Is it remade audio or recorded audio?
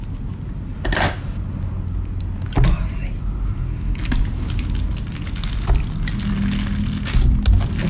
recorded